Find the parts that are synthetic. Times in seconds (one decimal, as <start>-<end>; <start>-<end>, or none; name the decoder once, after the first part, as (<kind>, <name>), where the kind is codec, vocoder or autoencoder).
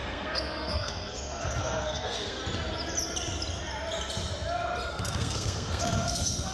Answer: 0.0-2.4 (codec, SNAC); 4.9-6.5